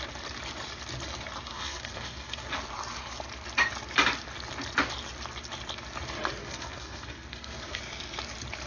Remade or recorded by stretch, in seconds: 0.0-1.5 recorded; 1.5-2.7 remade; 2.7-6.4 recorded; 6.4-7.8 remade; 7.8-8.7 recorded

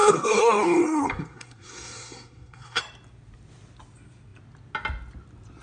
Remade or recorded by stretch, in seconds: 0.0-2.8 remade; 2.8-5.6 recorded